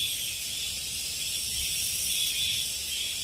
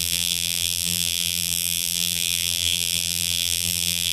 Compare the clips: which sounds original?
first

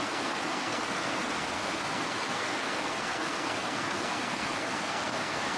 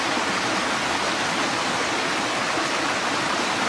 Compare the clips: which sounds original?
second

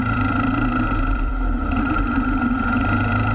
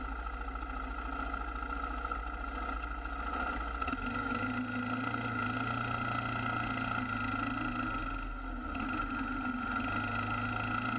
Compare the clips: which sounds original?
second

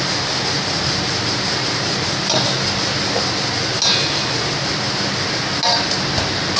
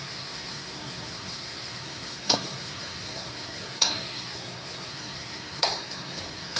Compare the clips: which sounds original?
first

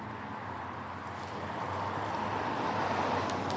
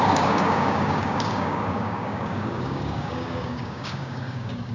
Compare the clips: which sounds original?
first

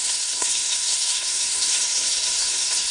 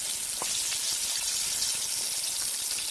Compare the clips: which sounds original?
second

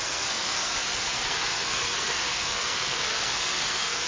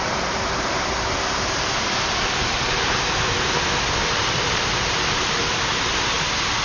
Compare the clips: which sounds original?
second